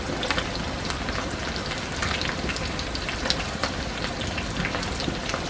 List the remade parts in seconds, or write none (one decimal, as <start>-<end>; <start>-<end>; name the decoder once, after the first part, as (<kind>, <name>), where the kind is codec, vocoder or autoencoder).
none